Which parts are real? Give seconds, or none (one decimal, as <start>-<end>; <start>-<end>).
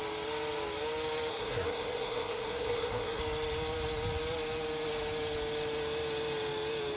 0.0-1.3; 3.2-7.0